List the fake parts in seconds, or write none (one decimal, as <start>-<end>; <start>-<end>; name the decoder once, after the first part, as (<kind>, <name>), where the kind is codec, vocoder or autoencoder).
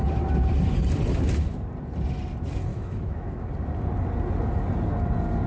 2.7-3.5 (autoencoder, DAC-VAE)